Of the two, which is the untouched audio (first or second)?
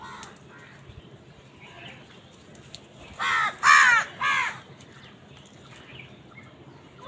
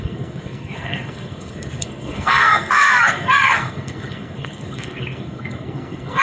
first